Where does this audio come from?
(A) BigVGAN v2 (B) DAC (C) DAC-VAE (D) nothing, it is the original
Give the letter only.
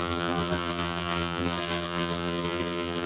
A